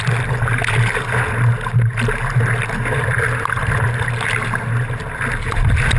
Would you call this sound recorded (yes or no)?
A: yes